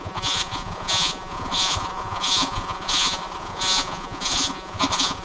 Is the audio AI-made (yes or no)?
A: yes